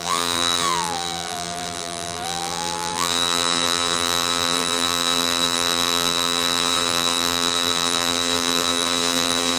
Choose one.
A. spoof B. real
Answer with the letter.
A